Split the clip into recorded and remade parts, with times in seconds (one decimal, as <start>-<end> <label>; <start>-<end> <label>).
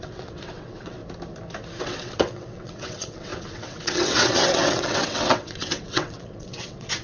0.0-1.0 remade; 1.0-1.8 recorded; 1.8-7.0 remade